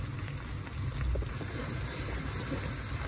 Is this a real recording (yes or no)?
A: yes